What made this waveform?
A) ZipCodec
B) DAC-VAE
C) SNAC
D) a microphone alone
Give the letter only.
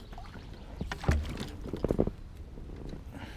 D